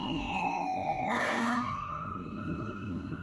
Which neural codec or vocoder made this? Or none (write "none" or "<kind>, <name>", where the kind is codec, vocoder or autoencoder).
codec, SNAC